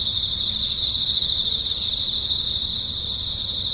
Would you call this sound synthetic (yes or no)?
no